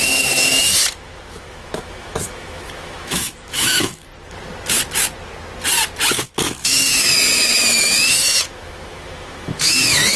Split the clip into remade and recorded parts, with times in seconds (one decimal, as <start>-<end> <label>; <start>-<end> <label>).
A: 0.0-4.1 remade; 4.1-6.1 recorded; 6.1-10.2 remade